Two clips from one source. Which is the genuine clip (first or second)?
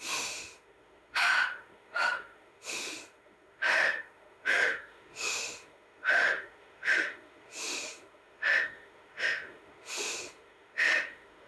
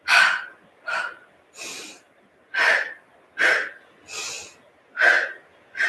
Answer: second